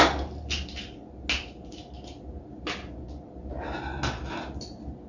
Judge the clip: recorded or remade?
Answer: recorded